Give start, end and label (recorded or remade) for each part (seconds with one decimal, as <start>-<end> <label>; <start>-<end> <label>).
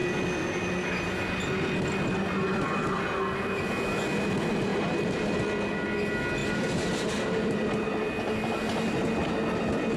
0.0-4.7 recorded; 4.7-5.3 remade; 5.3-6.4 recorded; 6.4-7.9 remade; 7.9-10.0 recorded